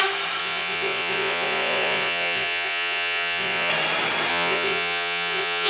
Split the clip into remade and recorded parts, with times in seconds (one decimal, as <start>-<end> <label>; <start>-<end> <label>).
0.0-0.4 recorded; 0.4-3.7 remade; 3.7-4.3 recorded; 4.3-5.7 remade